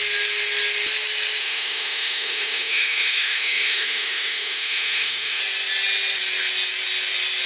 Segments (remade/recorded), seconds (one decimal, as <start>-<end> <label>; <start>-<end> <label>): 0.0-1.4 recorded; 1.4-5.4 remade; 5.4-7.5 recorded